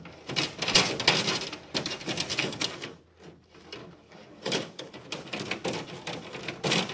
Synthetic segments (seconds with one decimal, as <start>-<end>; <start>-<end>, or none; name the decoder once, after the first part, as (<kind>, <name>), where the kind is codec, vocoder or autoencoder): 2.4-3.0 (codec, DAC); 3.8-4.9